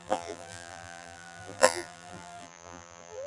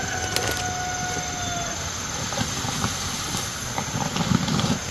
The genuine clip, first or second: second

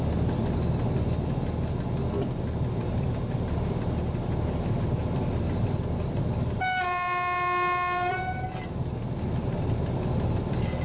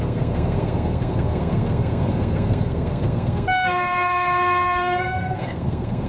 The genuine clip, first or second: first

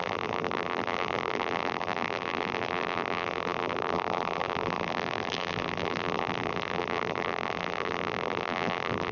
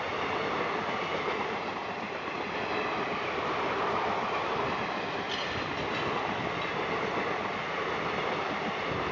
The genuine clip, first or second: second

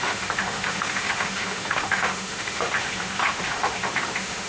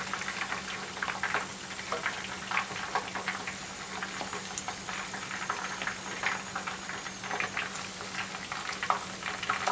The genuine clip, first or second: second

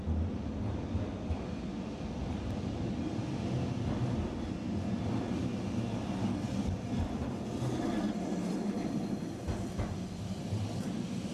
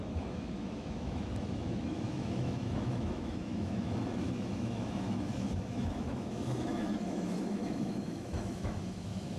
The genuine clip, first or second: first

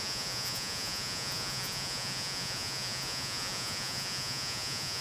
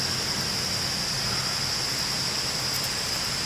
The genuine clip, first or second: second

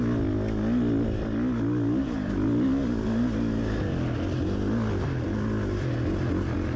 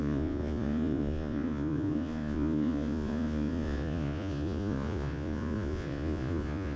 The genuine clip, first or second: first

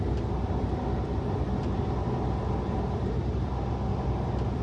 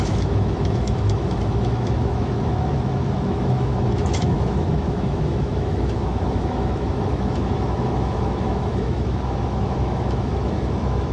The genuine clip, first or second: first